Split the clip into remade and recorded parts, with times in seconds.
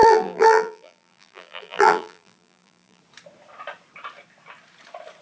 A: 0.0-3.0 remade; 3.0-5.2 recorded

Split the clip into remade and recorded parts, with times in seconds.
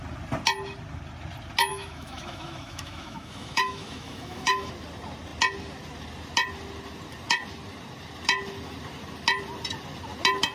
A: 0.0-1.7 recorded; 1.7-4.7 remade; 4.7-10.5 recorded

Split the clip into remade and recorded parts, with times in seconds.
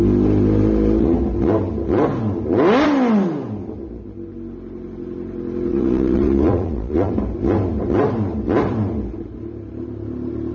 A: 0.0-5.7 recorded; 5.7-7.1 remade; 7.1-10.5 recorded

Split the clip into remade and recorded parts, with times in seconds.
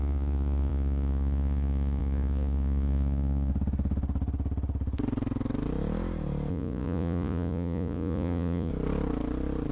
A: 0.0-3.5 remade; 3.5-6.5 recorded; 6.5-8.7 remade; 8.7-9.7 recorded